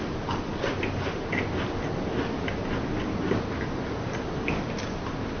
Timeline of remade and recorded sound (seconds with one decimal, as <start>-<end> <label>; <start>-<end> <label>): 0.0-5.4 recorded